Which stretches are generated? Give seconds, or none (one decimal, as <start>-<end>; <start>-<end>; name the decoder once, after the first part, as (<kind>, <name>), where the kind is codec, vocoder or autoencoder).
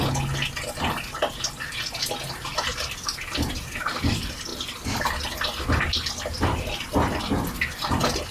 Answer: 2.5-3.5 (vocoder, BigVGAN v2)